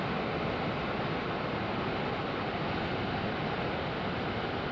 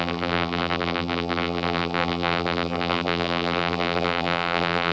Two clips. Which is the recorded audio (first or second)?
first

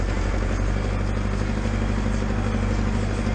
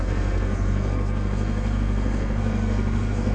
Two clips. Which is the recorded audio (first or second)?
first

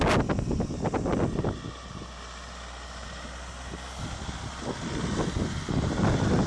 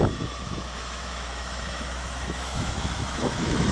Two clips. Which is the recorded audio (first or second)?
first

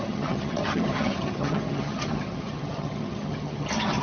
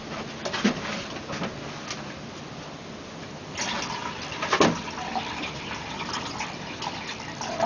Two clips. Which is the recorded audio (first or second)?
second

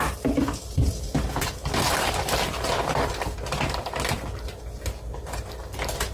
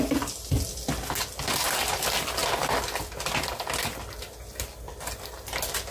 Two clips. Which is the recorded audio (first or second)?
second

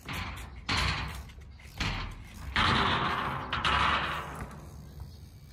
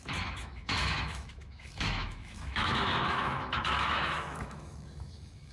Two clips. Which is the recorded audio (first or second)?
first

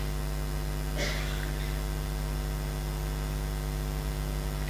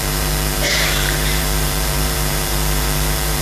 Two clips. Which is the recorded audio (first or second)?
first